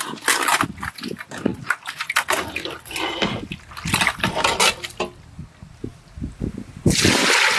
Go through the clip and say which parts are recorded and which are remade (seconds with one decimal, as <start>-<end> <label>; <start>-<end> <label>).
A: 0.0-7.6 recorded